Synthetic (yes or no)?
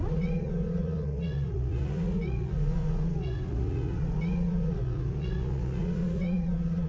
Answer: yes